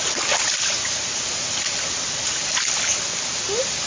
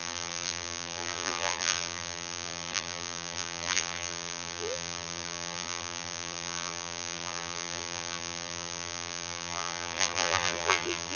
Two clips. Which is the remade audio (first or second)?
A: second